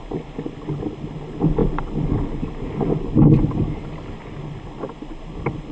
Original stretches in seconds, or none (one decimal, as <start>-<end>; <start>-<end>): 0.0-5.7